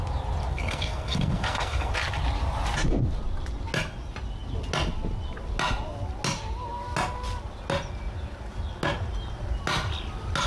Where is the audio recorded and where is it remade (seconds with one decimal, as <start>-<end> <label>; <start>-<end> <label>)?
0.0-0.5 recorded; 0.5-1.9 remade; 1.9-10.5 recorded